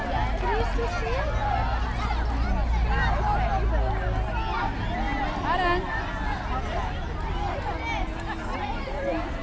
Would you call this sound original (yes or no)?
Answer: yes